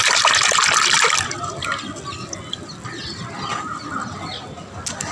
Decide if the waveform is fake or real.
real